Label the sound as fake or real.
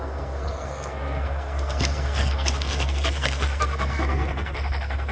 fake